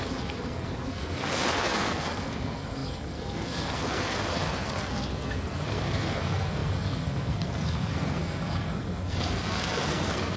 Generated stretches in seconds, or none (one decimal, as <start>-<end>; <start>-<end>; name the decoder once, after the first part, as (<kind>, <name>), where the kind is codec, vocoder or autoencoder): 0.0-10.4 (codec, SNAC)